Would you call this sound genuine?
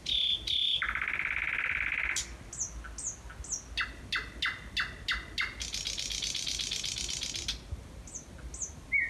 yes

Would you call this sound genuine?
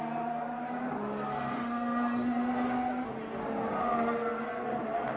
yes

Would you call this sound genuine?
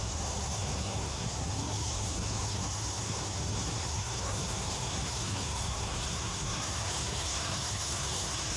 no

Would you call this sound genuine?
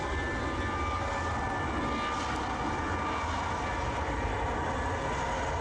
yes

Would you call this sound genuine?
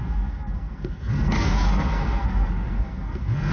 no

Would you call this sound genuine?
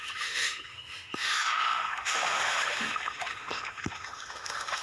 no